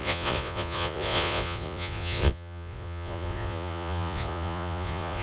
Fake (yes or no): yes